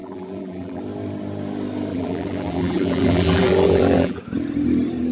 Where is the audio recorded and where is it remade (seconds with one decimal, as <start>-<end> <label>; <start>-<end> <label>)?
0.0-0.8 remade; 0.8-1.9 recorded; 1.9-4.2 remade; 4.2-5.1 recorded